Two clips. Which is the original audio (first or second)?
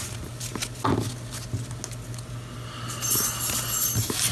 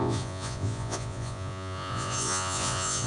first